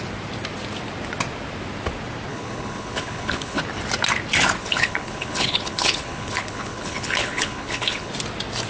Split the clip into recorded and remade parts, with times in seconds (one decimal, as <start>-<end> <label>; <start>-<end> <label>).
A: 0.0-2.3 recorded; 2.3-3.6 remade; 3.6-4.6 recorded; 4.6-8.1 remade; 8.1-8.7 recorded